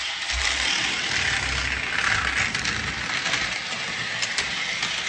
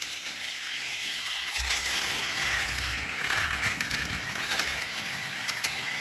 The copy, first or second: second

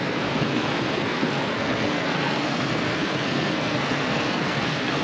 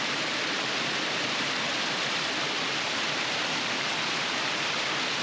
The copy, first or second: first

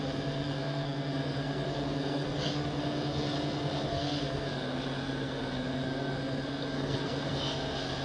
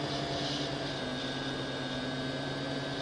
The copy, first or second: first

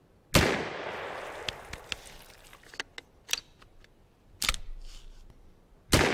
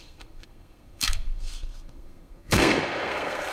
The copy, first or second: second